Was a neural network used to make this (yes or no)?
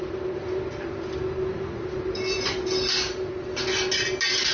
no